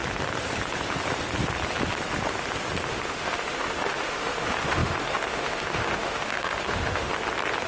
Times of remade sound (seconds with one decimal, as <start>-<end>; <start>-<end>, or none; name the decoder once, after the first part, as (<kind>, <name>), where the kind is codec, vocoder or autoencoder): 2.9-7.1 (autoencoder, DAC-VAE)